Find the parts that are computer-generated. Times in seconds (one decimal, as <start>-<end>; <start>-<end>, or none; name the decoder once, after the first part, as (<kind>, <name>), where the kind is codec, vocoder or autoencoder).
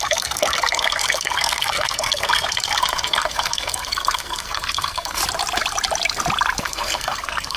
0.0-5.2 (codec, SNAC); 6.6-7.6